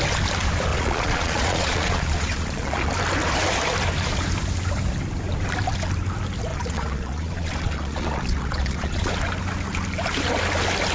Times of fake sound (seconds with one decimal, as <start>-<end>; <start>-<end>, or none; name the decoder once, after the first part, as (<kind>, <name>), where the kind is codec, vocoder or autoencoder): 0.7-2.9 (vocoder, Vocos); 6.5-9.1